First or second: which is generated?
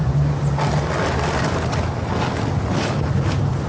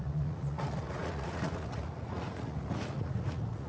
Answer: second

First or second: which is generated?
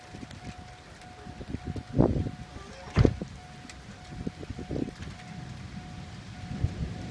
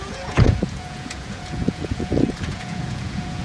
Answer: second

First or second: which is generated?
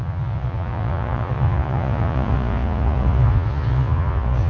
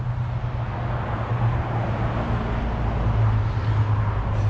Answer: first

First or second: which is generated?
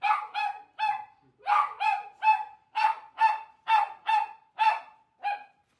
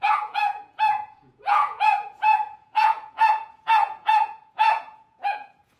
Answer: second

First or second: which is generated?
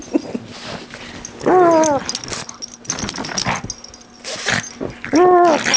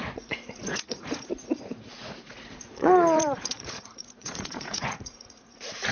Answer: second